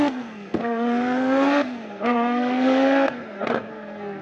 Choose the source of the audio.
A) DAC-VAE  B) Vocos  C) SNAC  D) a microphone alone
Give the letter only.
C